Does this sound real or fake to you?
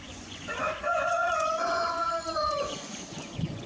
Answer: fake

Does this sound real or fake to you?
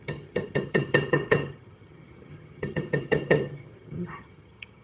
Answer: fake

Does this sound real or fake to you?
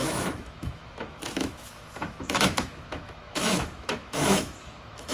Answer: fake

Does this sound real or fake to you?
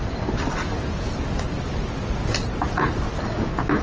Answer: real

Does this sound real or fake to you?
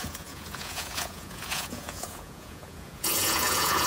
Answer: fake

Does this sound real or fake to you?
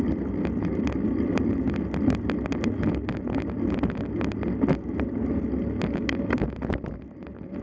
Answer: real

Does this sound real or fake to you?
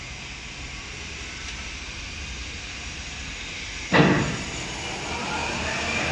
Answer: fake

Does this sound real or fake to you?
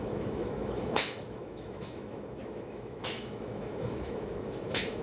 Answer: fake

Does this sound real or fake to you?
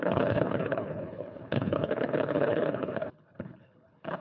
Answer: fake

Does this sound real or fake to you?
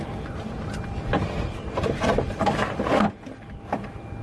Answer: real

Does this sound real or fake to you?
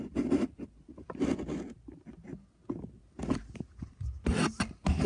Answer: real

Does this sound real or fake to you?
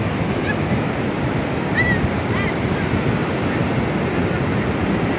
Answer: real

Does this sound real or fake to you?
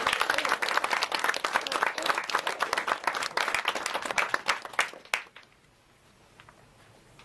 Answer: real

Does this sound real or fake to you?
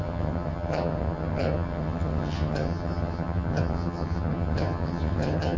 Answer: fake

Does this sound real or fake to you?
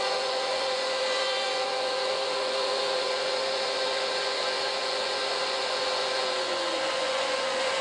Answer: fake